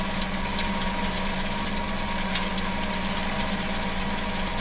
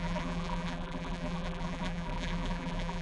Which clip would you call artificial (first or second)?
second